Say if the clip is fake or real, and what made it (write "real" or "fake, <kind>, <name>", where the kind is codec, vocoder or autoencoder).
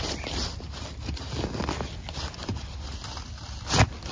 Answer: real